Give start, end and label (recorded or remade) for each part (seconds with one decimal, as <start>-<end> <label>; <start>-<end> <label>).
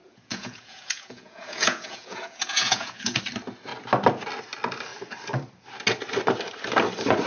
0.0-3.2 remade; 3.2-7.3 recorded